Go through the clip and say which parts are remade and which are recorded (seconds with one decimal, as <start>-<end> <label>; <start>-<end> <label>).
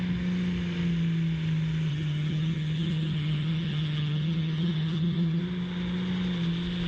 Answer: 0.0-1.9 recorded; 1.9-5.4 remade; 5.4-6.9 recorded